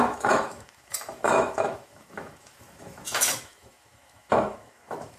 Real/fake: fake